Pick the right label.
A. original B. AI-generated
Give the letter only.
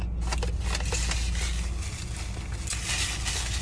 A